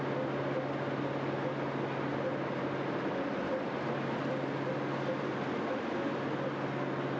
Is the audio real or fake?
real